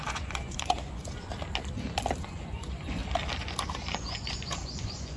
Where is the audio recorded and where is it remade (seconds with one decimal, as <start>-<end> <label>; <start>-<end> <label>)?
0.0-1.3 remade; 1.3-2.2 recorded; 2.2-3.0 remade; 3.0-3.9 recorded; 3.9-5.2 remade